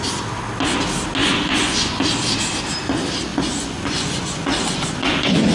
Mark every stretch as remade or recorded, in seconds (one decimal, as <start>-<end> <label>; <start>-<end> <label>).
0.0-1.2 recorded; 1.2-2.0 remade; 2.0-3.3 recorded; 3.3-5.5 remade